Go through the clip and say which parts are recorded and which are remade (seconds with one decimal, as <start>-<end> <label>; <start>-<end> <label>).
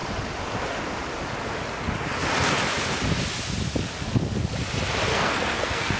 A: 0.0-5.1 recorded; 5.1-6.0 remade